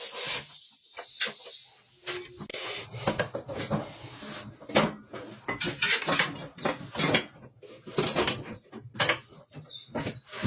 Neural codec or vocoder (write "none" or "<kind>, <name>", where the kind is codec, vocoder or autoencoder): none